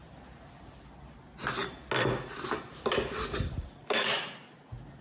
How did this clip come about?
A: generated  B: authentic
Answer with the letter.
B